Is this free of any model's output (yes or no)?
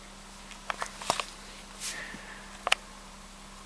yes